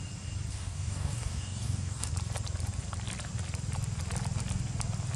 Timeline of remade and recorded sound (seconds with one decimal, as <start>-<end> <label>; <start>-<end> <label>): 0.0-0.5 recorded; 0.5-2.1 remade; 2.1-5.2 recorded